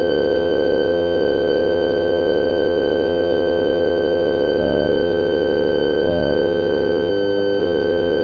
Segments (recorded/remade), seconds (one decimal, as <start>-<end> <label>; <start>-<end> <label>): 0.0-7.1 remade; 7.1-7.6 recorded; 7.6-8.2 remade